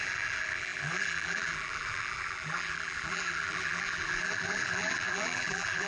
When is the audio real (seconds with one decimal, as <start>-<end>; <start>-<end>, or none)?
none